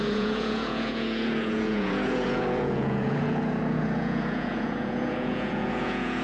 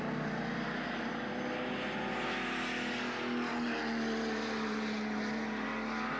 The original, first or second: second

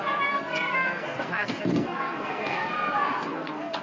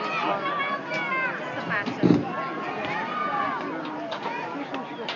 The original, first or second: second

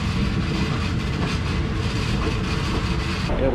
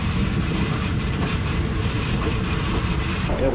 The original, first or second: first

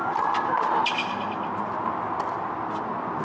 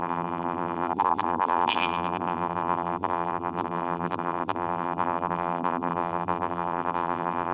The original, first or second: first